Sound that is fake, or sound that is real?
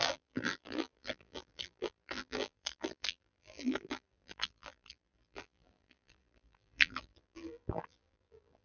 fake